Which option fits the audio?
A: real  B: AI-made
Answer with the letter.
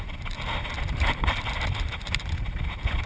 A